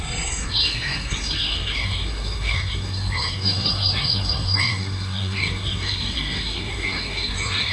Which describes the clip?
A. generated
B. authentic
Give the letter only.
A